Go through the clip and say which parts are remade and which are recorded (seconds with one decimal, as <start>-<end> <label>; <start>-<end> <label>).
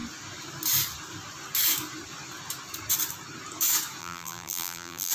0.0-4.0 recorded; 4.0-5.1 remade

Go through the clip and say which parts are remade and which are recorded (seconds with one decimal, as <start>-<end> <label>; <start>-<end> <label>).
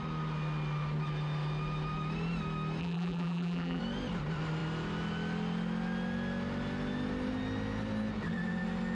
0.0-2.8 recorded; 2.8-3.8 remade; 3.8-8.9 recorded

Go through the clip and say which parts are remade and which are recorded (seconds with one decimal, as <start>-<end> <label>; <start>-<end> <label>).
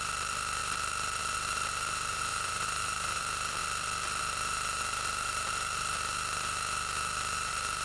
0.0-2.3 recorded; 2.3-3.2 remade; 3.2-7.8 recorded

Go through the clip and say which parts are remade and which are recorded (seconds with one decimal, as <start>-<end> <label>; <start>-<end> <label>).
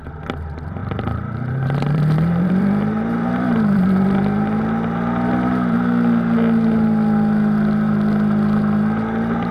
0.0-0.8 recorded; 0.8-4.6 remade; 4.6-9.5 recorded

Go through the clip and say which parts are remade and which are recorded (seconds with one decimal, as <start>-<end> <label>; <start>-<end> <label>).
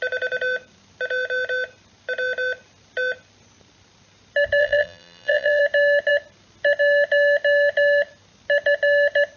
0.0-4.6 recorded; 4.6-5.6 remade; 5.6-9.4 recorded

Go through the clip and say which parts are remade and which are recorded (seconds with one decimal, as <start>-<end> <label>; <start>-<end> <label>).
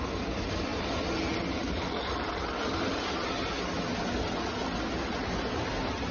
0.0-6.1 recorded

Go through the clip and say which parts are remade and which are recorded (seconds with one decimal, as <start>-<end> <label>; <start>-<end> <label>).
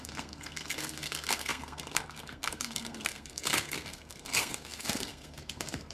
0.0-5.9 remade